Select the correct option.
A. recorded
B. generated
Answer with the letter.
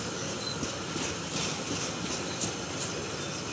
A